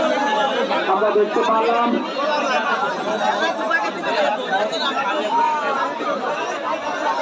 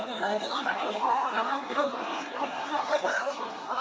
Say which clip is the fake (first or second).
second